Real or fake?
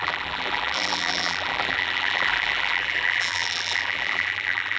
fake